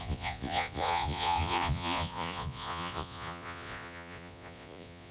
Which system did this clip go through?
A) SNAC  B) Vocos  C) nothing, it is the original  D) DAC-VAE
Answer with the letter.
B